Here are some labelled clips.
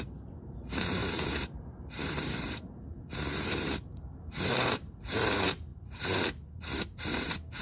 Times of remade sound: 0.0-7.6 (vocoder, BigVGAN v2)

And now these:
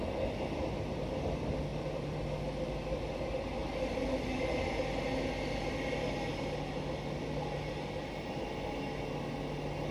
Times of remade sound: 1.7-2.2 (vocoder, BigVGAN v2); 3.6-4.6

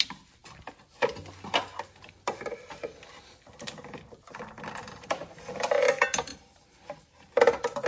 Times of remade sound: 5.2-5.8 (vocoder, BigVGAN v2); 6.3-7.3

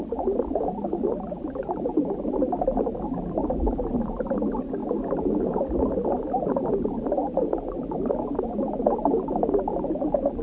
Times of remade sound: 1.6-3.9 (vocoder, BigVGAN v2); 6.7-8.4

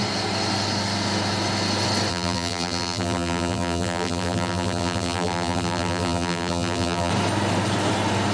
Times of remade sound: 2.1-7.1 (vocoder, BigVGAN v2)

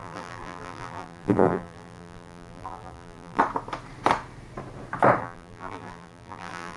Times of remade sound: 0.0-3.4 (vocoder, BigVGAN v2); 5.2-6.8

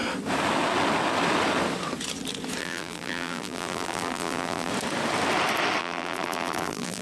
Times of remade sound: 2.6-4.7 (vocoder, BigVGAN v2); 5.8-7.0

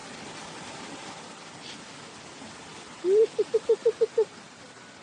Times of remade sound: 0.0-1.1 (vocoder, BigVGAN v2); 2.7-4.0